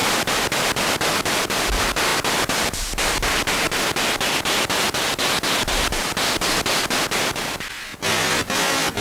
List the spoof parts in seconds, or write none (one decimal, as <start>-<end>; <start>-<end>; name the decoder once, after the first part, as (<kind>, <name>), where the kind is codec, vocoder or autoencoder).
1.7-7.9 (vocoder, BigVGAN v2)